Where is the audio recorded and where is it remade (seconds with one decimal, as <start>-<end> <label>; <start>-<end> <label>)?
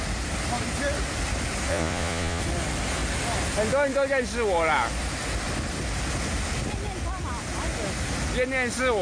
0.0-1.7 recorded; 1.7-2.4 remade; 2.4-9.0 recorded